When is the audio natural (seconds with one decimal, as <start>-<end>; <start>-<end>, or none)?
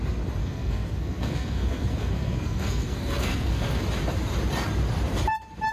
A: 0.0-0.4; 3.8-5.7